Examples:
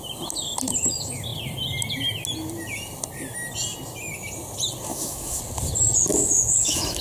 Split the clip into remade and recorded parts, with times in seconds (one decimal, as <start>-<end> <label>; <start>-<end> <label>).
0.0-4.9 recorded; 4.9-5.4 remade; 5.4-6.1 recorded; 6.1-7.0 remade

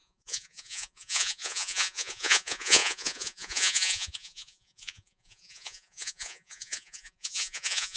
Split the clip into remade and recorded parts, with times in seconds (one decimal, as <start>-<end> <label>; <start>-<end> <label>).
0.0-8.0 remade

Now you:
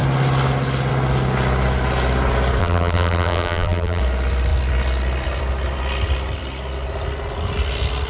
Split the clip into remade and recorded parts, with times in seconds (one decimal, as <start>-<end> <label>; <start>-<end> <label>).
0.0-2.6 recorded; 2.6-4.0 remade; 4.0-8.1 recorded

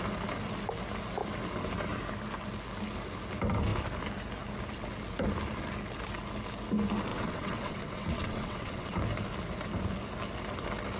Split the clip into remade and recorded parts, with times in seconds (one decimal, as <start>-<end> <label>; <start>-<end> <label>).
0.0-7.1 recorded; 7.1-9.0 remade; 9.0-11.0 recorded

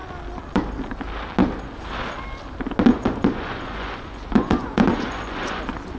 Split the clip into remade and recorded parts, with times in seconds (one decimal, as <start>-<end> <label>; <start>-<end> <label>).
0.0-2.9 recorded; 2.9-5.6 remade; 5.6-6.0 recorded